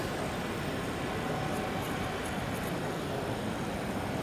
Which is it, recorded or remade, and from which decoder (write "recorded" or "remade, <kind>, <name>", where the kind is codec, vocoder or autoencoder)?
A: recorded